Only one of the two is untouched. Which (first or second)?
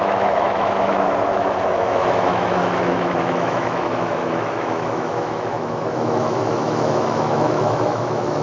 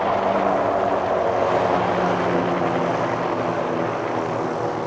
second